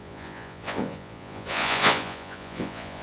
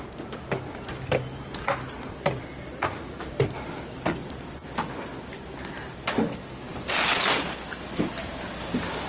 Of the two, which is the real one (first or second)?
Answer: second